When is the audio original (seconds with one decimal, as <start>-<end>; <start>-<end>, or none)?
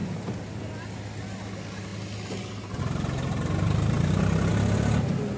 0.0-5.4